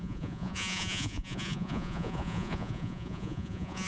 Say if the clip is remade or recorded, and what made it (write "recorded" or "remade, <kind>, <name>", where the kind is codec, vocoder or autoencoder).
remade, vocoder, Vocos